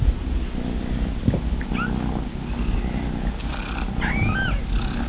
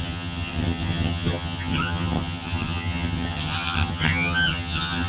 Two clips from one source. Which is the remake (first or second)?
second